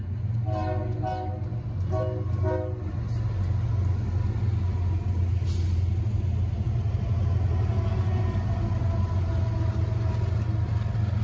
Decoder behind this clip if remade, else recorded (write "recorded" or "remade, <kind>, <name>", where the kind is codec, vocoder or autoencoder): recorded